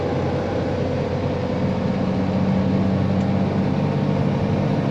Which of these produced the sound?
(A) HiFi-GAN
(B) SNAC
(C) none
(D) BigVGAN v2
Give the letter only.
C